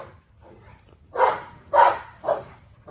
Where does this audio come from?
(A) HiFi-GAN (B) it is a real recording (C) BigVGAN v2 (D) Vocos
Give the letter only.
C